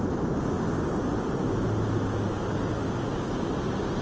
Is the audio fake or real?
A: real